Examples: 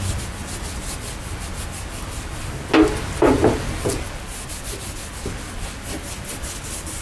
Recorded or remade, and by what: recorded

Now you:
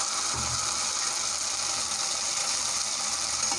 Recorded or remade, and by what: recorded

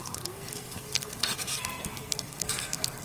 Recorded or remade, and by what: remade, codec, SNAC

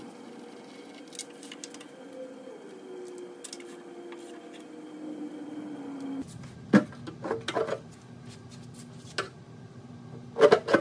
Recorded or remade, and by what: recorded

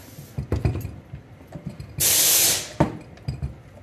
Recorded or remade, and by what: recorded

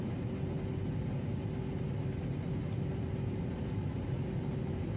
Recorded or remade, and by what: recorded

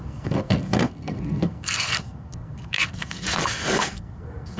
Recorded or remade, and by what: remade, codec, SNAC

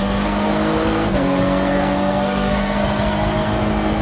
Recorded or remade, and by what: remade, codec, SNAC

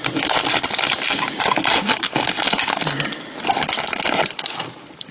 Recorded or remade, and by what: recorded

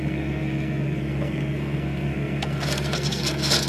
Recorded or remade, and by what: remade, codec, SNAC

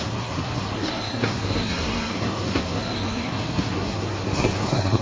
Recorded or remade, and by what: remade, codec, SNAC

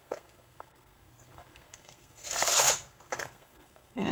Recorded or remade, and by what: remade, codec, SNAC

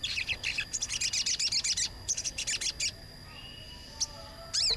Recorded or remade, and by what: recorded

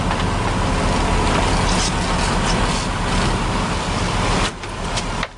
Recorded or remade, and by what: recorded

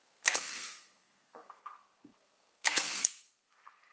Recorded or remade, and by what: remade, codec, SNAC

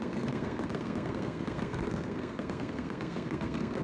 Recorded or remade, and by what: remade, codec, SNAC